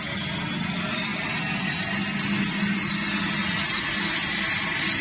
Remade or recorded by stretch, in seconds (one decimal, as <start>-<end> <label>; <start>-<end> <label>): 0.0-3.4 recorded; 3.4-3.9 remade; 3.9-5.0 recorded